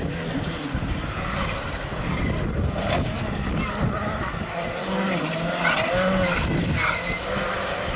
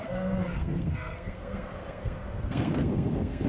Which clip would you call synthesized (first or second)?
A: second